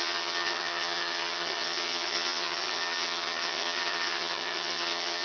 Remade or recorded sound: remade